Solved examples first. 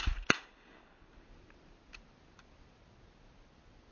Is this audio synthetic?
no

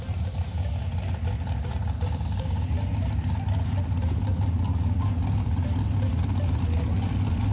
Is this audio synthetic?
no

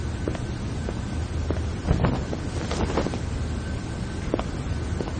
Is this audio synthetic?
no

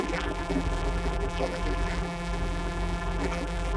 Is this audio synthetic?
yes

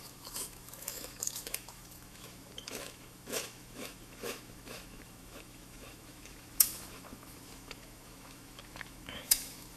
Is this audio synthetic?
yes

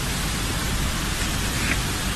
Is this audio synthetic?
no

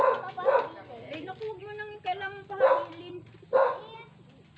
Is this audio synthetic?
no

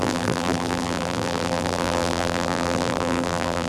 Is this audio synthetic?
yes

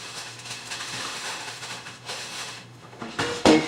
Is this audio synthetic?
yes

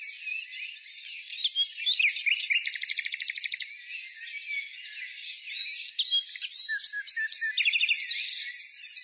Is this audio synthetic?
no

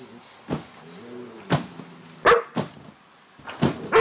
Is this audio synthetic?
no